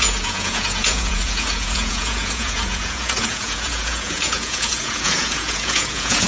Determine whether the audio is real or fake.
fake